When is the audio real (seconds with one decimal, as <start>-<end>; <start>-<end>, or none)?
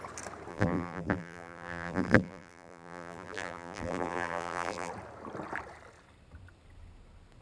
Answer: 0.0-0.5; 4.9-7.4